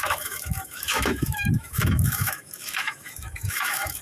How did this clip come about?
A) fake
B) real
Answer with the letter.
A